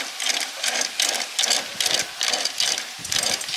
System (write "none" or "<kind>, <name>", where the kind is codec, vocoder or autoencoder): none